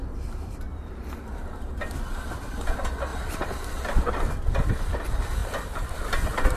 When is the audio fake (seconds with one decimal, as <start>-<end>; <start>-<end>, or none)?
0.0-1.4; 3.1-4.3; 5.4-6.1